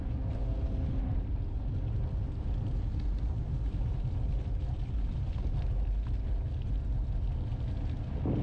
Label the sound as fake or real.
real